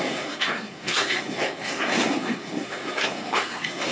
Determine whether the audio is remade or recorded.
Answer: remade